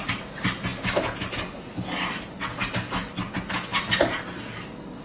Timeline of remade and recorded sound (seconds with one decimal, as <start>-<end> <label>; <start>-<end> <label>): 0.0-5.0 recorded